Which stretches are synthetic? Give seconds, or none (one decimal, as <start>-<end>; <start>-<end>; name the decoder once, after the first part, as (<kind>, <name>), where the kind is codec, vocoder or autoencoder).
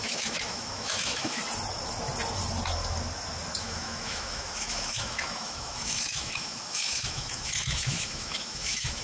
0.0-1.4 (autoencoder, DAC-VAE); 3.6-9.0